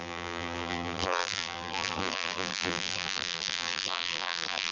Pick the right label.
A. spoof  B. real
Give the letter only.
A